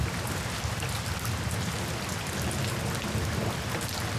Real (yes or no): yes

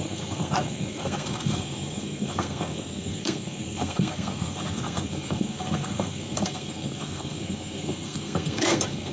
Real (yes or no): no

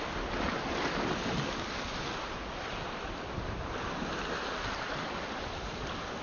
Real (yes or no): yes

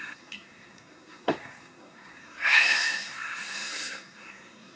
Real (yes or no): no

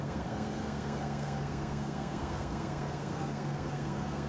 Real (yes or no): no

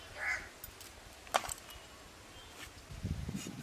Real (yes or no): yes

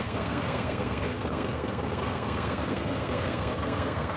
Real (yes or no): no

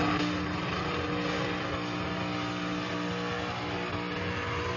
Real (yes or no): yes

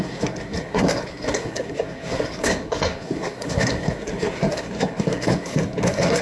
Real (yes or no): no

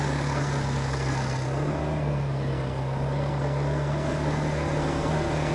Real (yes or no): no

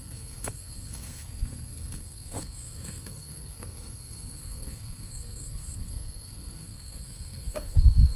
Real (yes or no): no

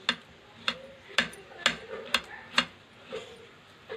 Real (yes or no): yes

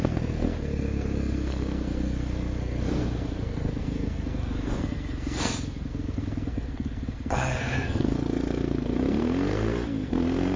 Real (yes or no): no